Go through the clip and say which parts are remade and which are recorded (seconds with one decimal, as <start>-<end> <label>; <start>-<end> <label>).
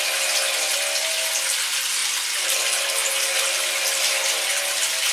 0.0-5.1 recorded